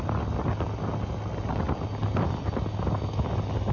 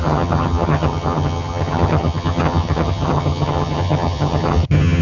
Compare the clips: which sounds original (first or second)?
first